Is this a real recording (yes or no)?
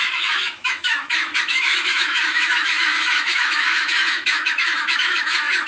no